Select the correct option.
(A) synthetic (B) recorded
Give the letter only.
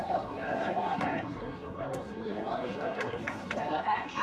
A